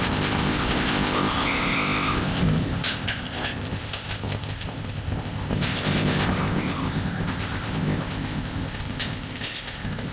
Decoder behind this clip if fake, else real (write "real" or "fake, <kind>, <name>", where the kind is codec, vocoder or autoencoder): fake, codec, ZipCodec